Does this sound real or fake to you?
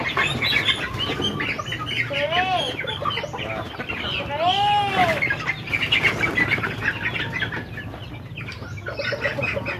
real